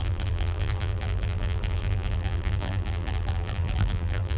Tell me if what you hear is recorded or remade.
remade